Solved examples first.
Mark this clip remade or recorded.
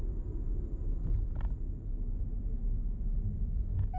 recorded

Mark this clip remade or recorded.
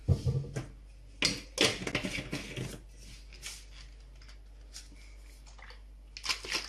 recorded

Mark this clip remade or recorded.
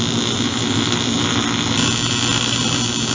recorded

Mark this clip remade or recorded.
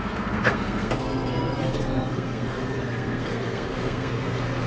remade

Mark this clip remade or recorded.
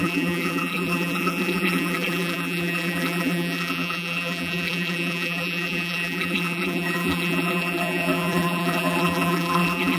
remade